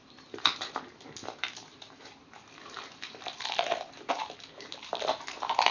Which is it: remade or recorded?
remade